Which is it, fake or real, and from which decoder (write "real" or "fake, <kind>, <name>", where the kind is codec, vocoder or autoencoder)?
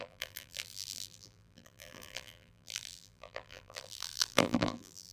fake, vocoder, BigVGAN v2